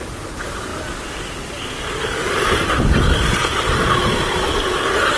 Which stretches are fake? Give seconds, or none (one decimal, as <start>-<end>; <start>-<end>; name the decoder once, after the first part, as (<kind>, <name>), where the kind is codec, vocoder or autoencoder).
2.2-2.8 (vocoder, BigVGAN v2)